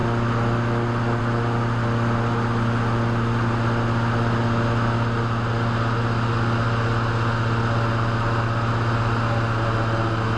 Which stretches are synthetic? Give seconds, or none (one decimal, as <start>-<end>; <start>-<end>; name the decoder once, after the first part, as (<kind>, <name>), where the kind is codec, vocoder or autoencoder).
none